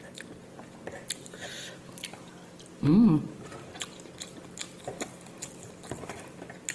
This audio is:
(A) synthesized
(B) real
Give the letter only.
B